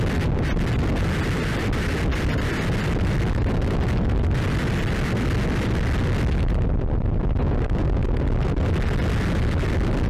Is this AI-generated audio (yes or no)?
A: no